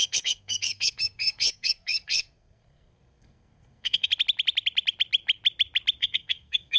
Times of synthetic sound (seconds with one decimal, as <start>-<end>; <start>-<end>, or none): 0.0-4.1; 6.0-6.8